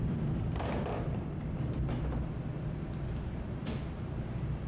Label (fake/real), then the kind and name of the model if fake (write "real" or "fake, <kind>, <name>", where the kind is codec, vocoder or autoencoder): fake, vocoder, BigVGAN v2